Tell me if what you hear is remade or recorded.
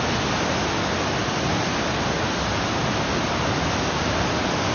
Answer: recorded